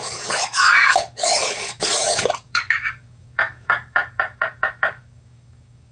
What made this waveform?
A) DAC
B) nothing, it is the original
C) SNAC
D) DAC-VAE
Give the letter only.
A